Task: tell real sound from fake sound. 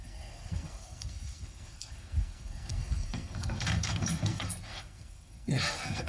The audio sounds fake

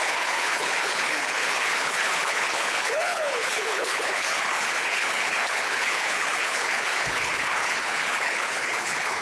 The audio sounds fake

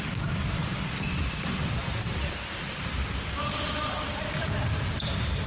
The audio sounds real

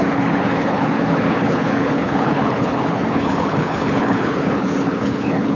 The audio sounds fake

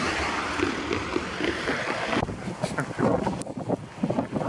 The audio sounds real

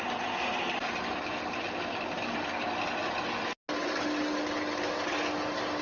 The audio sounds real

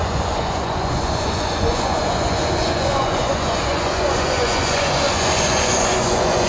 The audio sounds fake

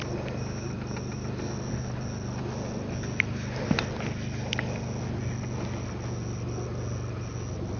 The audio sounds real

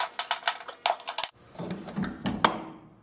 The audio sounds real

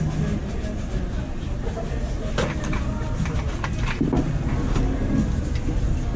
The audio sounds real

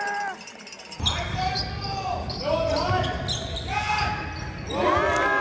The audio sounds real